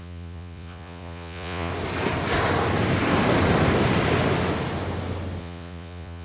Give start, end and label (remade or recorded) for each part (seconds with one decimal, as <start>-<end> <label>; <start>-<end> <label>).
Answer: 0.0-1.7 remade; 1.7-5.4 recorded; 5.4-6.2 remade